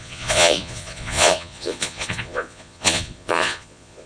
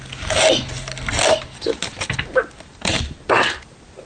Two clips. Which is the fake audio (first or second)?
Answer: first